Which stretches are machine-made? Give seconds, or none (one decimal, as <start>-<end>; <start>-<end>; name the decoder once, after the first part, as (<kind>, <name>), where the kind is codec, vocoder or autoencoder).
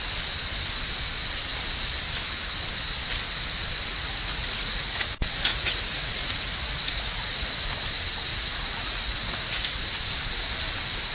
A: 3.9-5.0 (vocoder, Vocos); 5.5-7.6; 8.3-9.8